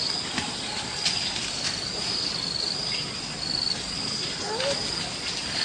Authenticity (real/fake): real